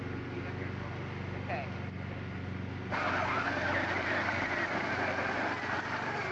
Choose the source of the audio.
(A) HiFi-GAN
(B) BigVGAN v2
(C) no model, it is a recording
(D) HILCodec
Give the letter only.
C